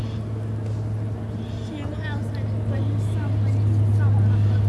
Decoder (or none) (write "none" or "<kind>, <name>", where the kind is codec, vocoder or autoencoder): none